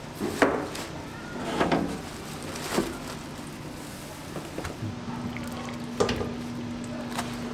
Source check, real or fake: real